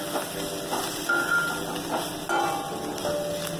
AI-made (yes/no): no